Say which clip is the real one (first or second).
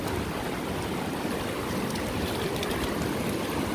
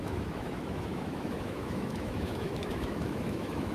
first